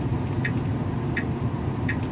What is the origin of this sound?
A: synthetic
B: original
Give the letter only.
B